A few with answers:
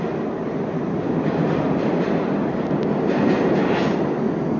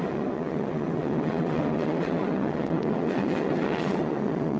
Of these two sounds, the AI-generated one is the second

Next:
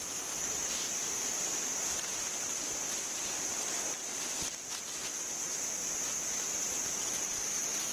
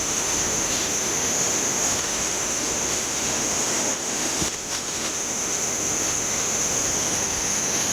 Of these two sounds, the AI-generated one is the second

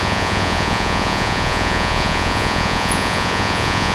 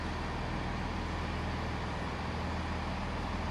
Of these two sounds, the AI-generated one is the first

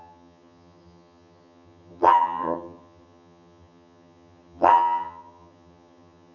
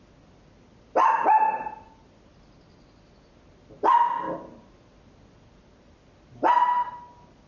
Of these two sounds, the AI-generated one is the first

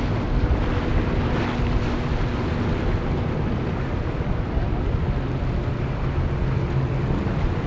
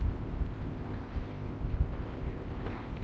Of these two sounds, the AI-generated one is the second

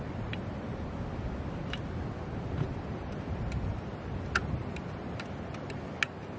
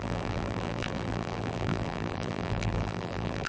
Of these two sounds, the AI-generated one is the second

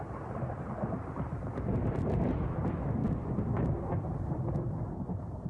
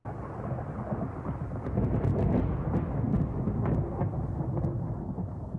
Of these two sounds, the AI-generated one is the first